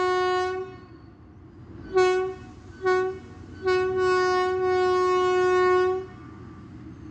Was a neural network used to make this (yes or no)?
no